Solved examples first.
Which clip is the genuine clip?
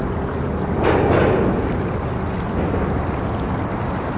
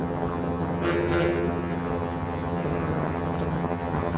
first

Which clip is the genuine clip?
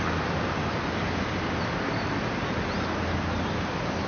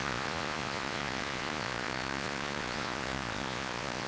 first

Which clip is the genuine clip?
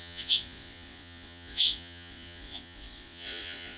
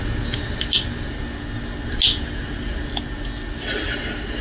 second